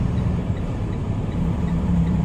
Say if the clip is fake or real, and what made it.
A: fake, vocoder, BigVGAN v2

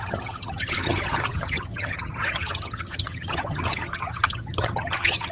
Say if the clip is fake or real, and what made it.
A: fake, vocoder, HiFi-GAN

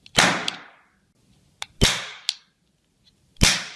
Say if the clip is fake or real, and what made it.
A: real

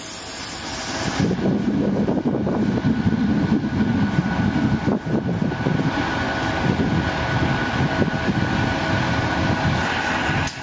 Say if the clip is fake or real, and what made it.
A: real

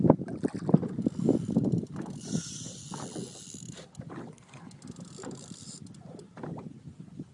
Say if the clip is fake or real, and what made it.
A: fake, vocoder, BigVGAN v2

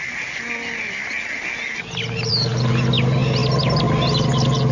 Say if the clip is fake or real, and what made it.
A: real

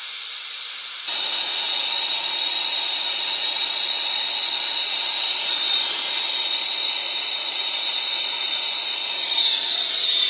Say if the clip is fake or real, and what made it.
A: real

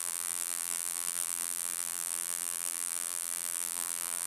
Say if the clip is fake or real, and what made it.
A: fake, vocoder, BigVGAN v2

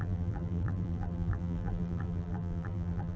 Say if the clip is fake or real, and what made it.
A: fake, vocoder, BigVGAN v2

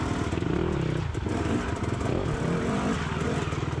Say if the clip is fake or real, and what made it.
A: real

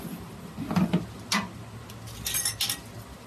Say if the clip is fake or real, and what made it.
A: real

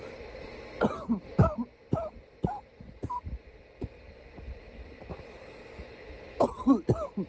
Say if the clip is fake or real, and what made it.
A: real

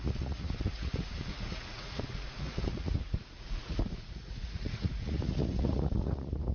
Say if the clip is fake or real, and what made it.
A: fake, vocoder, Vocos